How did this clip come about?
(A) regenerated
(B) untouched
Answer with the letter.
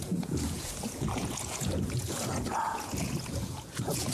A